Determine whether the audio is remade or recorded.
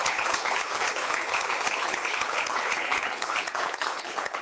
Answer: remade